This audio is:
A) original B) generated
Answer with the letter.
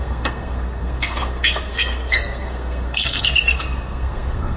B